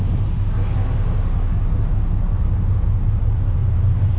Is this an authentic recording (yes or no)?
yes